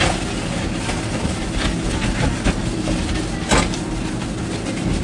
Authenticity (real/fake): real